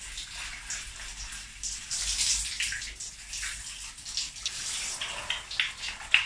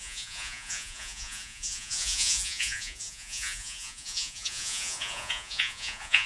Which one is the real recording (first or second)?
first